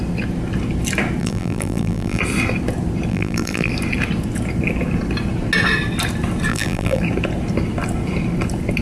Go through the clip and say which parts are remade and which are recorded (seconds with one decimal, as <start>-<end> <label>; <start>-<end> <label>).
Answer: 0.0-1.2 recorded; 1.2-2.2 remade; 2.2-3.1 recorded; 3.1-3.7 remade; 3.7-6.5 recorded; 6.5-7.0 remade; 7.0-8.8 recorded